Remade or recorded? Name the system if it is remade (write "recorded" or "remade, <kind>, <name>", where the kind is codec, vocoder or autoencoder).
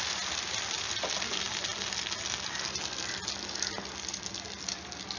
recorded